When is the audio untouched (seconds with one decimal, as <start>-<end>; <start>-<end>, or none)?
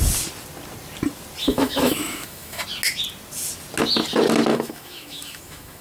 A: 0.0-1.4; 2.6-4.5